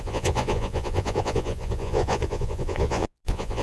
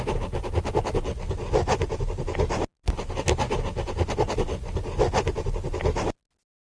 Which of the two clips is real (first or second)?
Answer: second